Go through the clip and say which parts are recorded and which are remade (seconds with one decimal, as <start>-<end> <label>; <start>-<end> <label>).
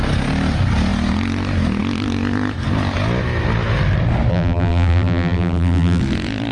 0.0-4.3 recorded; 4.3-6.0 remade; 6.0-6.5 recorded